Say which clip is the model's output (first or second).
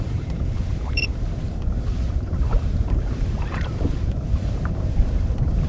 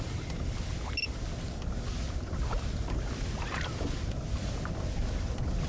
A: first